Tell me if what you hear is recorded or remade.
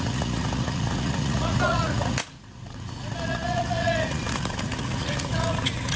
remade